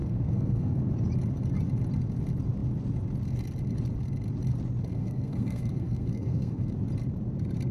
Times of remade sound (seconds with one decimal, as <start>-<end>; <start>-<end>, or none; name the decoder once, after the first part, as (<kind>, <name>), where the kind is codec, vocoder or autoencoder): 0.0-0.8 (codec, SNAC); 4.9-6.7